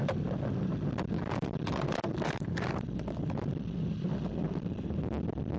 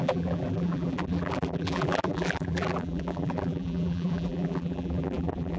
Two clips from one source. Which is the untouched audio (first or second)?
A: first